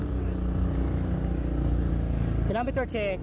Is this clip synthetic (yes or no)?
no